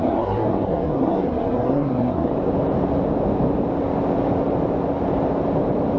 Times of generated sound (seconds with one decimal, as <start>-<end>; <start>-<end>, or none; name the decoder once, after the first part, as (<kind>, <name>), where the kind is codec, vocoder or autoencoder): 0.0-2.3 (codec, SNAC)